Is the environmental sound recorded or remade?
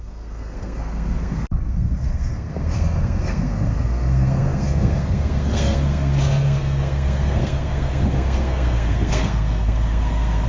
remade